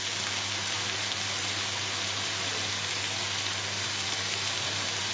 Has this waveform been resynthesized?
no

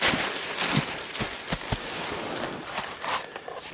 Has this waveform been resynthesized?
no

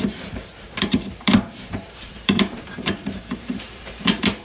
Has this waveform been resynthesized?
yes